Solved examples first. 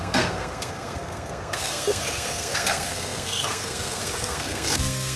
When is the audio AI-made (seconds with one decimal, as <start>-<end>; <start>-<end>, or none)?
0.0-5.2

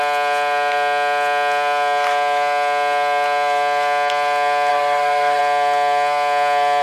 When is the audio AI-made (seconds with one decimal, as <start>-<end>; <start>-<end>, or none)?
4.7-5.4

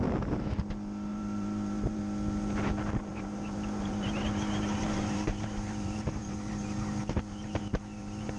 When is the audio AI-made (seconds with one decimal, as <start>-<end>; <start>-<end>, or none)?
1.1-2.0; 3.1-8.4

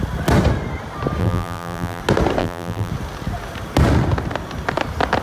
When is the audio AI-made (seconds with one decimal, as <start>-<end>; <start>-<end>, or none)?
1.2-2.0; 2.4-2.9

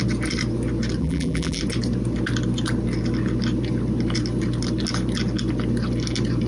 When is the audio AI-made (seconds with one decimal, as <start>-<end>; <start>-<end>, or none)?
1.0-1.6

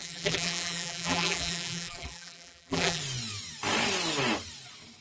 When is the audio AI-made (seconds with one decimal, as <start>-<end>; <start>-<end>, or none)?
0.0-3.0